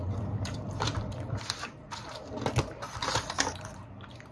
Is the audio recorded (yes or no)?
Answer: yes